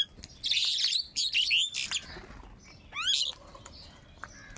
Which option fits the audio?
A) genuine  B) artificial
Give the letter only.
A